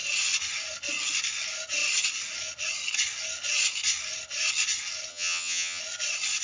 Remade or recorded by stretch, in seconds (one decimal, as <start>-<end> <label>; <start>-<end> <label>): 0.0-5.1 recorded; 5.1-5.8 remade; 5.8-6.4 recorded